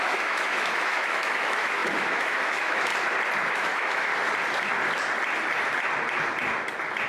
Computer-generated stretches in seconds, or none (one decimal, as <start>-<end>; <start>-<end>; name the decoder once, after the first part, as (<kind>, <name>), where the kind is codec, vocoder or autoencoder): 0.0-2.9 (autoencoder, DAC-VAE); 3.5-4.1